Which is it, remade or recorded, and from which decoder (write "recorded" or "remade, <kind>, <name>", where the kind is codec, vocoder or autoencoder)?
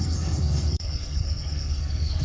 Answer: remade, codec, SNAC